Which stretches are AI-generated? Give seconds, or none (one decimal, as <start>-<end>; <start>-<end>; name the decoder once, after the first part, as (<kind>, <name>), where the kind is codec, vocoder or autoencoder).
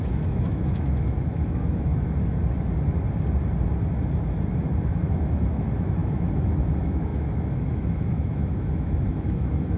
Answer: 0.0-1.9 (autoencoder, DAC-VAE); 4.9-9.8